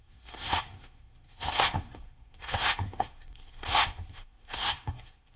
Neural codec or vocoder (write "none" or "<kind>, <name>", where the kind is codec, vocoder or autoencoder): codec, SNAC